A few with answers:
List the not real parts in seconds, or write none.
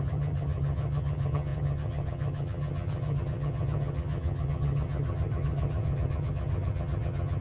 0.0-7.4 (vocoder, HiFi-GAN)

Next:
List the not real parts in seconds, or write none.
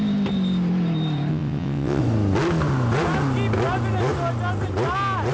1.3-2.0 (vocoder, WaveNeXt)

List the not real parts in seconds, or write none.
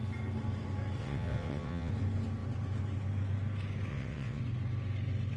1.0-1.9 (vocoder, WaveNeXt); 3.9-4.4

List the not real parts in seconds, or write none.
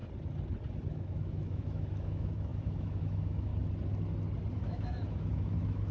0.9-3.5 (autoencoder, DAC-VAE); 4.5-5.9